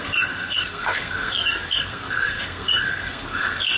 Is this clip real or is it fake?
fake